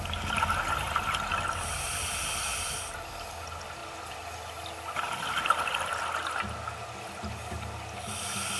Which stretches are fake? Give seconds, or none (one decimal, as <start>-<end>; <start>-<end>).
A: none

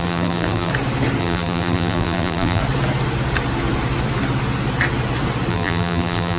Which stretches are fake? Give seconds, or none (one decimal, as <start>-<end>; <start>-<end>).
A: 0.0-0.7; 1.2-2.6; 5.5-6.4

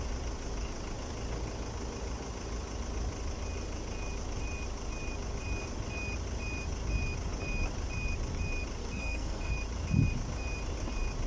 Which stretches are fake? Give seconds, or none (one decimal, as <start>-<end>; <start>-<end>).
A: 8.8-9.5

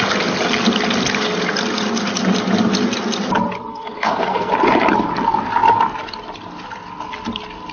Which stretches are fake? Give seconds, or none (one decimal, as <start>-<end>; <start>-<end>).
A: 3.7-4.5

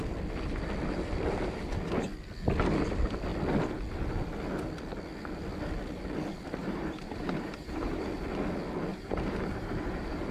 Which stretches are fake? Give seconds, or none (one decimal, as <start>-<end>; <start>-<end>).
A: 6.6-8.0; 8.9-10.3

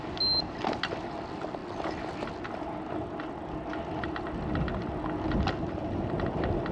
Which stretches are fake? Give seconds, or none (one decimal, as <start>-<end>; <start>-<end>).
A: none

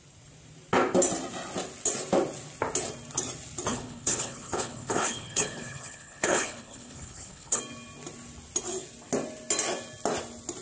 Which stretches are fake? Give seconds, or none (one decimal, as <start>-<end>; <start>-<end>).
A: 3.7-7.6